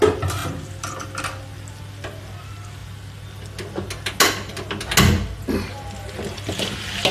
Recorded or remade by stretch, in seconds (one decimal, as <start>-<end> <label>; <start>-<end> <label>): 0.0-7.1 recorded